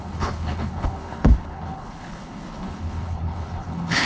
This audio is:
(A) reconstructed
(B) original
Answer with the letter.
A